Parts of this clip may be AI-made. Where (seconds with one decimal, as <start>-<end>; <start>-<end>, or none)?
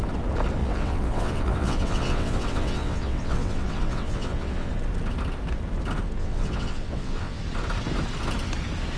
0.6-4.7; 6.2-7.4